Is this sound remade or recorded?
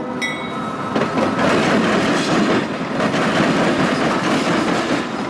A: recorded